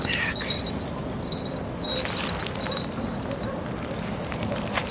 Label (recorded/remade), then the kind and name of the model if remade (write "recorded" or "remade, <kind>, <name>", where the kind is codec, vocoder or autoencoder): recorded